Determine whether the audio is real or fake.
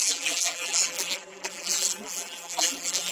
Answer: fake